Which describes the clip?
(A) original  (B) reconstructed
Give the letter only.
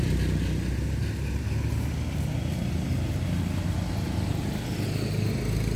A